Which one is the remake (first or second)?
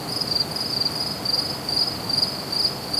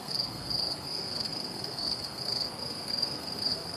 second